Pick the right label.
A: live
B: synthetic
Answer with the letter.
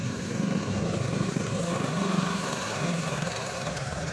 B